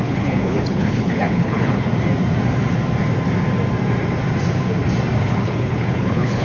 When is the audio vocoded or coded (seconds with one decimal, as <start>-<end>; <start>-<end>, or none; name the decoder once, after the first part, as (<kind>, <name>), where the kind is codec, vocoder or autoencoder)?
0.0-1.9 (codec, HILCodec); 5.2-6.4